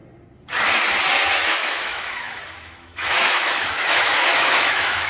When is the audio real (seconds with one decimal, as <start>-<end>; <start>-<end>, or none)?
0.0-1.5